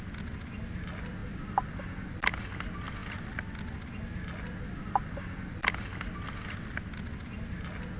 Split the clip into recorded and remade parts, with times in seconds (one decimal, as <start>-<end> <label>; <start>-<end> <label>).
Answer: 0.0-8.0 recorded